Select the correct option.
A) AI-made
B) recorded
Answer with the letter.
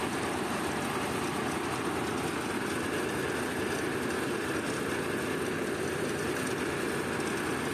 B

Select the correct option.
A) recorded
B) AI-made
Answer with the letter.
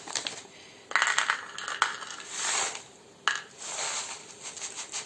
A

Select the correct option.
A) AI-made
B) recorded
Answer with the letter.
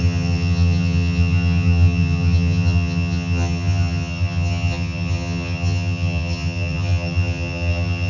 A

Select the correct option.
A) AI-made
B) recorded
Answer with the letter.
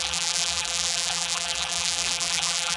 A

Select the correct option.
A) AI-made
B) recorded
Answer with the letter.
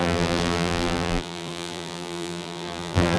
A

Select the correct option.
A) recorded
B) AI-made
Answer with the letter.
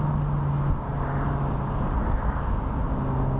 A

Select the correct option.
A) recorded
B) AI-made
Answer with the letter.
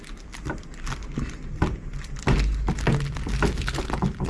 B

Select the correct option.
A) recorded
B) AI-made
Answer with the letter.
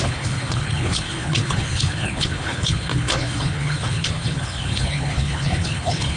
B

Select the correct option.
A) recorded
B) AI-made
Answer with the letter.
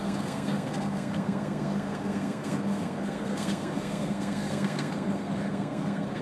B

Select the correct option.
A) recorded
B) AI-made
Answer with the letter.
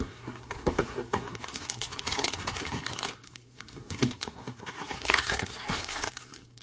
B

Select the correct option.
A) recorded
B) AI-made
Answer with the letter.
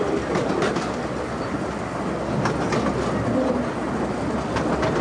A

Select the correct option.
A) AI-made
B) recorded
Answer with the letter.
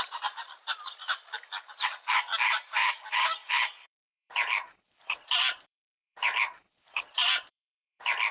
A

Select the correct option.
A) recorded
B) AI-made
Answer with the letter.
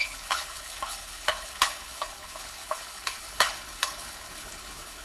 B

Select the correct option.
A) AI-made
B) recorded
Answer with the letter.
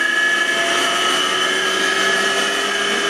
B